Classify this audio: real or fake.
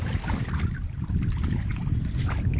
real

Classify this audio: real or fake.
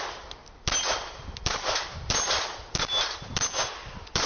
real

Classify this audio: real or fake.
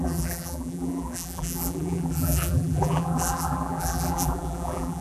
fake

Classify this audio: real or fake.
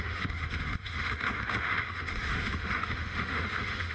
fake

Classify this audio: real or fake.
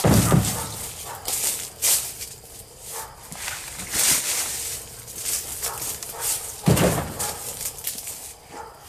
real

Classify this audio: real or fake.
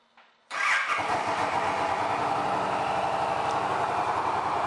real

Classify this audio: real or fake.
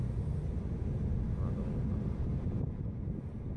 real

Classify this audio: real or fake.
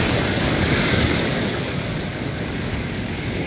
fake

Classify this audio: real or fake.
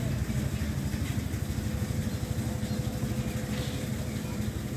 real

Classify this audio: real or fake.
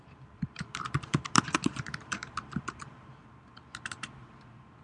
fake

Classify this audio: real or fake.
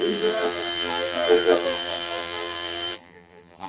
fake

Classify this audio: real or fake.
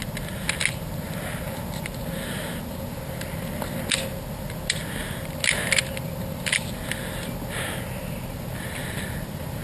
real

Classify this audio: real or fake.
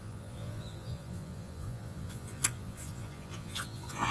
fake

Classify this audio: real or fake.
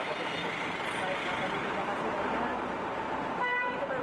real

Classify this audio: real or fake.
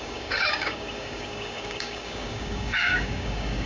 fake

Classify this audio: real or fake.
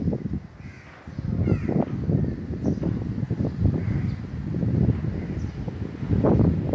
real